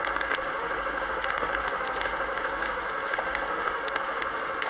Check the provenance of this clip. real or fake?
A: fake